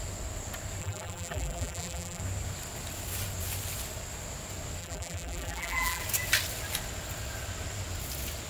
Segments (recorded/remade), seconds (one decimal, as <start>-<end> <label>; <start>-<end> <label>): 0.0-0.8 recorded; 0.8-2.2 remade; 2.2-4.8 recorded; 4.8-6.0 remade; 6.0-8.5 recorded